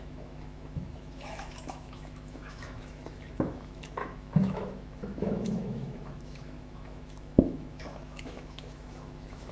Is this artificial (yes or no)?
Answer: yes